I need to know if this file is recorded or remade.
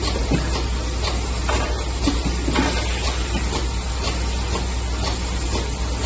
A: recorded